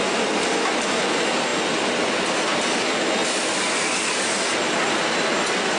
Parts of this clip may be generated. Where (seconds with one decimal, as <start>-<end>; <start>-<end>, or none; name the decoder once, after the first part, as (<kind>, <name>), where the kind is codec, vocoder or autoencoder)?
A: none